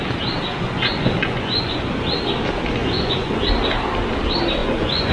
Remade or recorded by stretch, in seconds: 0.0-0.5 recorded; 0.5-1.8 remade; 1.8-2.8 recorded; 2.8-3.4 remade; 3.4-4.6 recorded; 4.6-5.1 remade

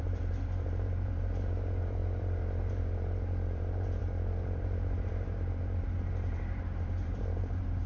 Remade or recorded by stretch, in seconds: 0.0-7.9 remade

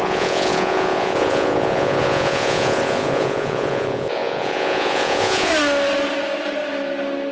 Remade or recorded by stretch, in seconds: 0.0-5.5 remade; 5.5-7.3 recorded

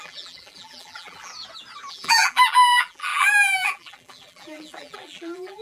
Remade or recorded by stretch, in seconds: 0.0-1.3 remade; 1.3-1.9 recorded; 1.9-5.6 remade

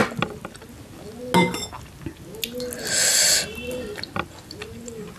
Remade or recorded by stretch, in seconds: 0.0-5.2 recorded